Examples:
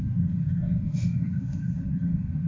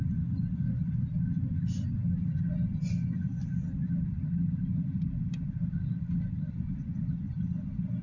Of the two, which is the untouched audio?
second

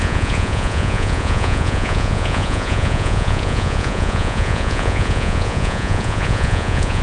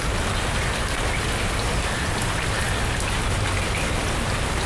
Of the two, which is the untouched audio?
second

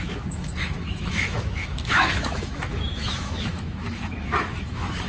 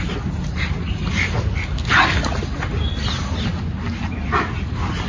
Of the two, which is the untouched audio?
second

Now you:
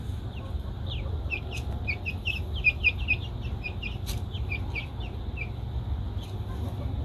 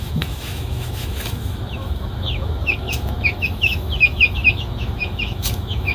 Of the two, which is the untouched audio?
first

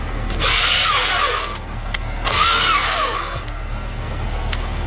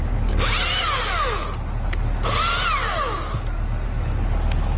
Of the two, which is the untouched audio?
second